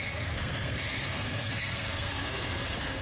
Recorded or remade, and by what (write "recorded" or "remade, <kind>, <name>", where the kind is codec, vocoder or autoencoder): remade, codec, SNAC